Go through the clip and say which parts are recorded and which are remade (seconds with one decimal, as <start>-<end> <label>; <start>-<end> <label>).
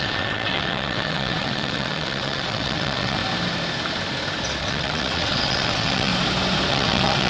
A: 0.0-3.2 remade; 3.2-4.6 recorded; 4.6-6.1 remade; 6.1-6.7 recorded; 6.7-7.3 remade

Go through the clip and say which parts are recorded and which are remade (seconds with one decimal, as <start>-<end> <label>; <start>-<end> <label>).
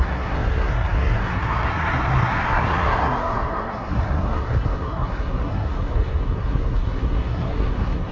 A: 0.0-8.1 remade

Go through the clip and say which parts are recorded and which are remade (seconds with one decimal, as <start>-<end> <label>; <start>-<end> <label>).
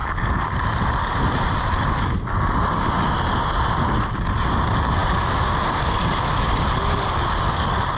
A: 0.0-8.0 recorded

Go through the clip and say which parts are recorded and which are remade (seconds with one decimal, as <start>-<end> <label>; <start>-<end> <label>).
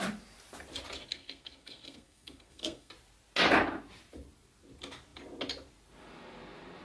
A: 0.0-1.1 recorded; 1.1-2.9 remade; 2.9-6.8 recorded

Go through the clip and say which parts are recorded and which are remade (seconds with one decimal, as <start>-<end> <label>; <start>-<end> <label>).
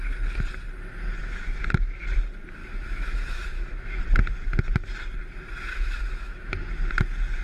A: 0.0-1.2 recorded; 1.2-2.0 remade; 2.0-2.6 recorded; 2.6-4.0 remade; 4.0-5.7 recorded; 5.7-6.5 remade; 6.5-7.4 recorded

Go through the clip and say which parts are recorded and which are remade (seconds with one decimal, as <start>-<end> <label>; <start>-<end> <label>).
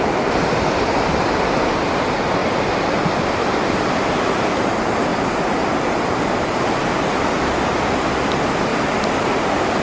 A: 0.0-9.8 recorded